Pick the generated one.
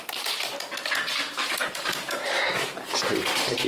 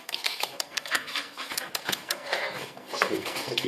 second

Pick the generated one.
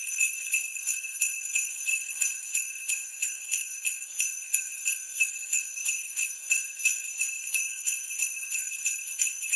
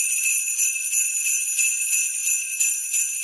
first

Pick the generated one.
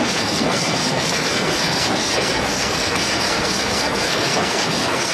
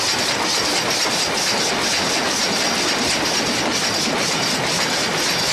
first